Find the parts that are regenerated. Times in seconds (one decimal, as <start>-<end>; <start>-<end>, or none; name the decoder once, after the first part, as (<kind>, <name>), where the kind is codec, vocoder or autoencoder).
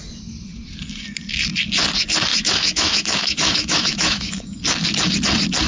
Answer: 2.3-4.6 (autoencoder, DAC-VAE)